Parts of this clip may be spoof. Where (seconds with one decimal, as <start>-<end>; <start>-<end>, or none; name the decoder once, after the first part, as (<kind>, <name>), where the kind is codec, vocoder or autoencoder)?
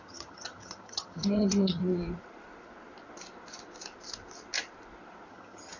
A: 0.0-1.8 (vocoder, HiFi-GAN); 5.3-5.8